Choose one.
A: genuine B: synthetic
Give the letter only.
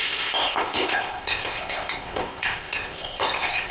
B